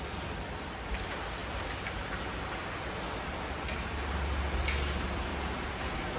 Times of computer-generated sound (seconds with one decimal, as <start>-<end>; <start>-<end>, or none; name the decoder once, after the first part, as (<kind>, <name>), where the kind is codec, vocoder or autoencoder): 1.4-2.3 (vocoder, BigVGAN v2); 5.3-5.8

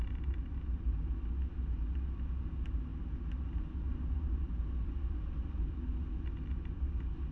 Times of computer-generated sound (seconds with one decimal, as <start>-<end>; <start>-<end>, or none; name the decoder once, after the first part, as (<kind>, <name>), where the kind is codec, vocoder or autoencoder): none

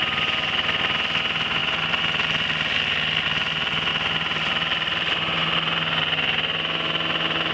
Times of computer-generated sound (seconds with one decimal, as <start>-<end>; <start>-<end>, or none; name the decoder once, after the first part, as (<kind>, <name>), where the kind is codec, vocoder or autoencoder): none

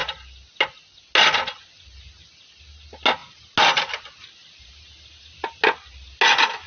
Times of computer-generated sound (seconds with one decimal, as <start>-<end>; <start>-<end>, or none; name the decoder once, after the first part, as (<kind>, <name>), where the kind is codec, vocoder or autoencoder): none

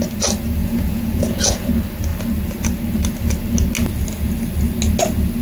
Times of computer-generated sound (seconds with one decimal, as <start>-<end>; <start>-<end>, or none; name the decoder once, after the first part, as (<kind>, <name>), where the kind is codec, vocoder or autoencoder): 0.6-1.7 (vocoder, Vocos)

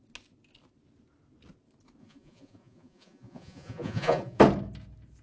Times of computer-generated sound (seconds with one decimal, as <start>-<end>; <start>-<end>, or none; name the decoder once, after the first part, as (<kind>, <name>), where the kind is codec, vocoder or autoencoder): 2.0-4.4 (vocoder, Vocos)